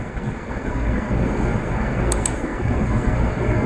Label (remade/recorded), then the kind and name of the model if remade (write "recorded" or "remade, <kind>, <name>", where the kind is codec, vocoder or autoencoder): remade, codec, SNAC